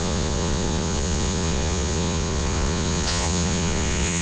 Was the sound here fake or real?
fake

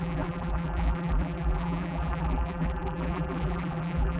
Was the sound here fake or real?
fake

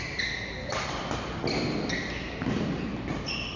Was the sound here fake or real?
real